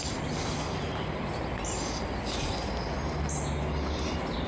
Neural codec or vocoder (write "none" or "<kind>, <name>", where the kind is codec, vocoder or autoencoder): none